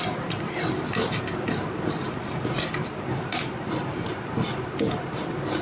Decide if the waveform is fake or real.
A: real